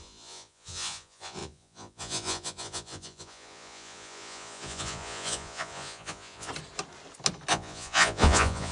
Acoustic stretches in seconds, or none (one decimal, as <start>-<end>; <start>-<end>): 6.5-7.5